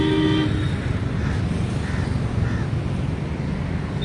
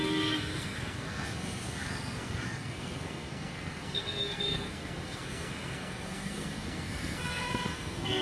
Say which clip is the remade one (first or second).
second